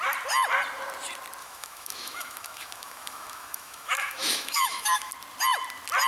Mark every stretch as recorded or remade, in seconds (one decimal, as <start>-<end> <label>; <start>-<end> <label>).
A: 0.0-1.4 recorded; 1.4-5.1 remade; 5.1-6.1 recorded